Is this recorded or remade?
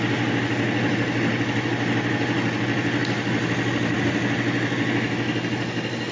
recorded